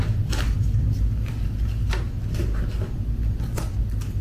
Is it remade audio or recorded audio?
recorded